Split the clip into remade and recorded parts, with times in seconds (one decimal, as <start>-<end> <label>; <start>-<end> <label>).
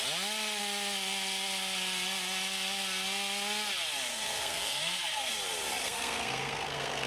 0.0-4.1 recorded; 4.1-5.3 remade; 5.3-5.8 recorded; 5.8-7.1 remade